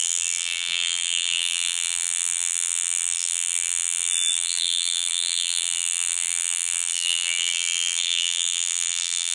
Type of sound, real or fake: fake